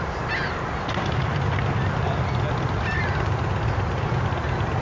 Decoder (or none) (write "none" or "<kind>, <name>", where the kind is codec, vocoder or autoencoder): none